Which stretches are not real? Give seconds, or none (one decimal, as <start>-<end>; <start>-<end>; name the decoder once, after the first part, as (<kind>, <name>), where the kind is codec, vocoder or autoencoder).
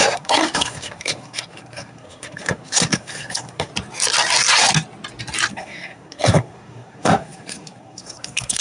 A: 0.0-3.7 (codec, SNAC); 5.5-8.6